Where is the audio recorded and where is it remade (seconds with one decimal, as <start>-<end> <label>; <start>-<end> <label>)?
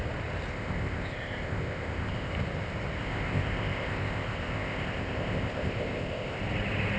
0.0-0.5 recorded; 0.5-2.3 remade; 2.3-3.0 recorded; 3.0-6.4 remade; 6.4-7.0 recorded